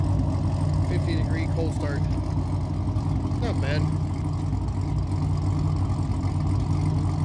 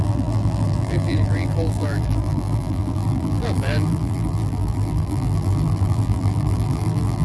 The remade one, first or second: second